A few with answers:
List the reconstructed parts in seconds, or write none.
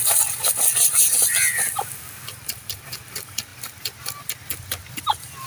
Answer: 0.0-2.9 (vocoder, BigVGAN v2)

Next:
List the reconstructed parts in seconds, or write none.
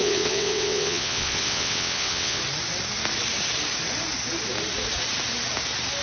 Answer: 0.0-2.4 (vocoder, WaveNeXt)